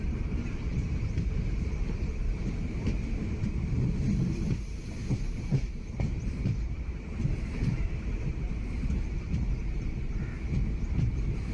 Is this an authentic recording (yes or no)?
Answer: no